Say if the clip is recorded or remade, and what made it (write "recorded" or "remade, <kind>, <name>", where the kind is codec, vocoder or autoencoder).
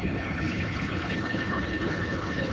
remade, codec, HILCodec